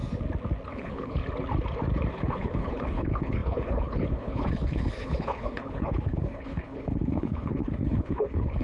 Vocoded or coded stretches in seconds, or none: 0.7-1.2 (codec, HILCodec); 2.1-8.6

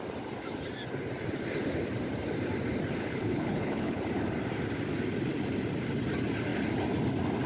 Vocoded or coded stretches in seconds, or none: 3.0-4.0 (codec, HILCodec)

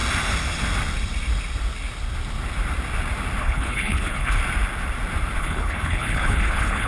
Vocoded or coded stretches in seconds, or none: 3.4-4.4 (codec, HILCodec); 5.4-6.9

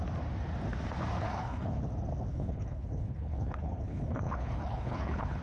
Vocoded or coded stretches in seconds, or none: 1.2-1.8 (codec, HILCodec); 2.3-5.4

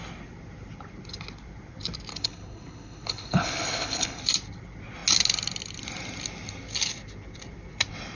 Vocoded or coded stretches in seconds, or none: 2.1-4.2 (codec, HILCodec)